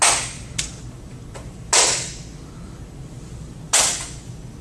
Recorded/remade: recorded